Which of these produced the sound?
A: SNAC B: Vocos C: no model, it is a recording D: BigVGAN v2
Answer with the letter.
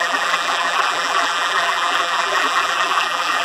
D